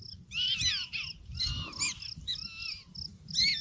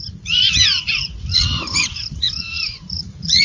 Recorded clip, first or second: first